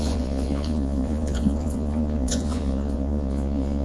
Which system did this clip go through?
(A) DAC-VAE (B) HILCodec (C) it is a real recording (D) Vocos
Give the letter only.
D